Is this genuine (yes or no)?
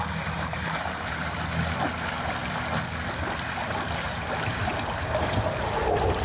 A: yes